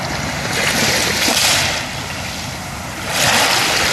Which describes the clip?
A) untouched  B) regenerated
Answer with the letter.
A